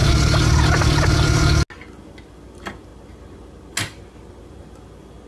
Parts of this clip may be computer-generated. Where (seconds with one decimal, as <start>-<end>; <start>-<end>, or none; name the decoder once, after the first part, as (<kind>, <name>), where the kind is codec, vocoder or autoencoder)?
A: none